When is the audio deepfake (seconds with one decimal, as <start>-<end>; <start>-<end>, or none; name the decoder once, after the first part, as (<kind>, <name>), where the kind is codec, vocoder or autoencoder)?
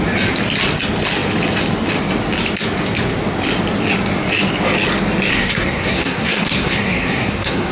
5.3-7.7 (codec, SNAC)